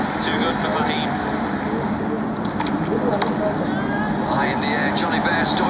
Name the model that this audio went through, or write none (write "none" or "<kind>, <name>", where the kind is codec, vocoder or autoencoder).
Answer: none